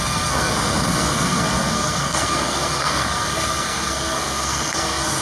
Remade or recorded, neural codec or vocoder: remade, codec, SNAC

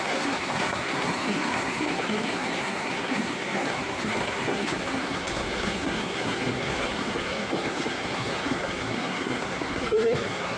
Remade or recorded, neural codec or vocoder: remade, codec, SNAC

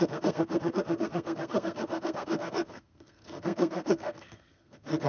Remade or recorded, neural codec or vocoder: remade, codec, SNAC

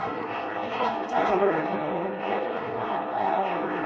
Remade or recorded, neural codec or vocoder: remade, codec, SNAC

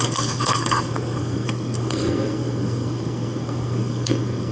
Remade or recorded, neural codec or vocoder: remade, codec, SNAC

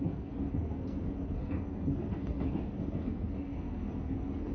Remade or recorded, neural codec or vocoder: remade, codec, SNAC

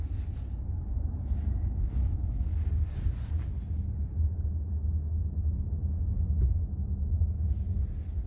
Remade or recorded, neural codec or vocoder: recorded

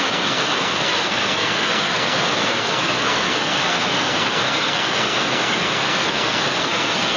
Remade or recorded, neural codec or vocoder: remade, codec, SNAC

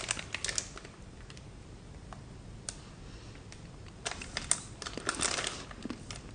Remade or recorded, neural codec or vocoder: recorded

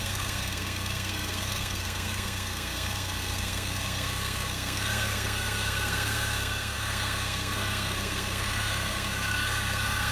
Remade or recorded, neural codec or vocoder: remade, codec, SNAC